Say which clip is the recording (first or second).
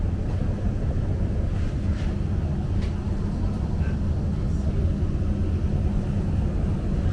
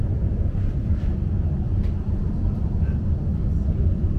first